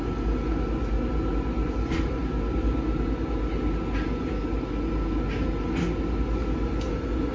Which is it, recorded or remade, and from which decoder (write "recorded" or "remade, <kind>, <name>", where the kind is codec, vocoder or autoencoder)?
recorded